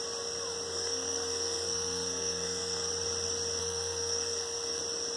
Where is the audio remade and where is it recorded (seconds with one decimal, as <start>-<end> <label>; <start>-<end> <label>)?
0.0-0.7 recorded; 0.7-2.9 remade; 2.9-3.6 recorded; 3.6-4.8 remade; 4.8-5.2 recorded